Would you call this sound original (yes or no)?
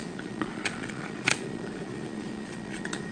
no